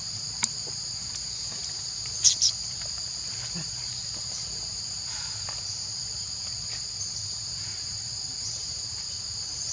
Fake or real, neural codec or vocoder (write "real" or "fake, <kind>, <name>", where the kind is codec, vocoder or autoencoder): real